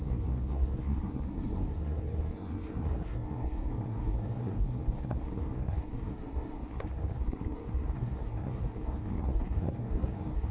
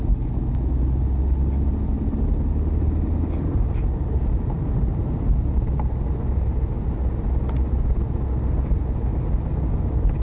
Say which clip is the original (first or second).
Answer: second